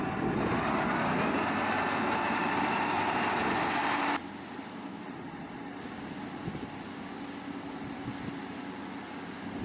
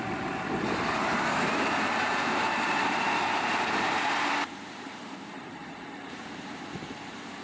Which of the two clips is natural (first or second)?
first